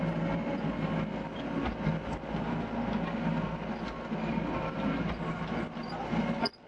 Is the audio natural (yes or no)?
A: yes